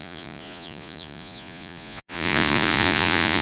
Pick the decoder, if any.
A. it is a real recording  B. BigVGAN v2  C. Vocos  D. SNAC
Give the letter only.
C